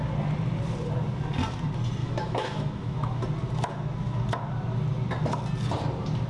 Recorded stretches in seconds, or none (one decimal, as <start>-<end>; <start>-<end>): 0.0-2.0; 3.2-6.3